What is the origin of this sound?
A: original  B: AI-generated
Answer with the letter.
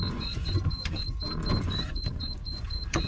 B